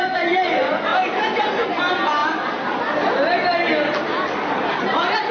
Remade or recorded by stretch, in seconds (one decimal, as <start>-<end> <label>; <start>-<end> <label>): 0.0-5.3 recorded